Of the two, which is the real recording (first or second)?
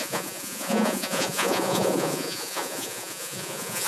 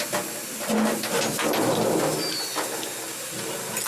second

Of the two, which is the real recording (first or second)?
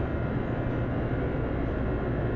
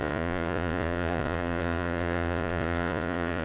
first